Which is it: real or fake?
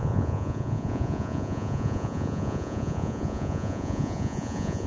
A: fake